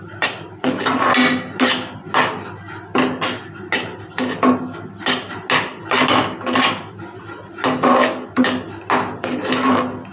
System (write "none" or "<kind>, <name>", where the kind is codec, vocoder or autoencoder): none